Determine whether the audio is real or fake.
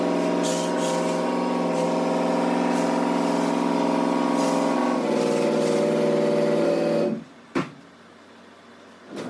real